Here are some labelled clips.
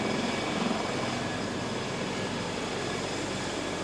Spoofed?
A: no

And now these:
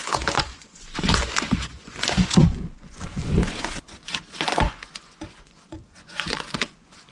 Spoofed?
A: yes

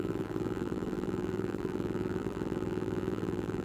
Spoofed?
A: yes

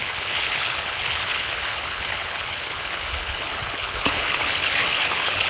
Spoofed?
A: yes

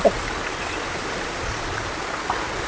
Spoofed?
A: no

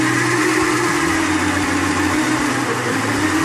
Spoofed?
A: no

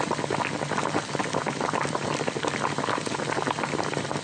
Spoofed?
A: no